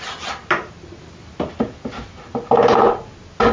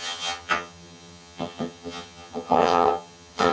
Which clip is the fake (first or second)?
second